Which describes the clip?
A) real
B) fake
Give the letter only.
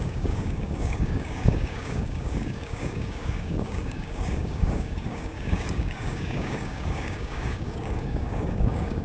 B